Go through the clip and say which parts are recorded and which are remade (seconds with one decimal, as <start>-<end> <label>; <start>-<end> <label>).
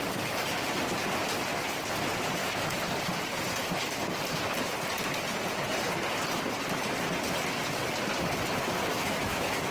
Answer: 0.0-2.4 recorded; 2.4-2.9 remade; 2.9-8.9 recorded; 8.9-9.7 remade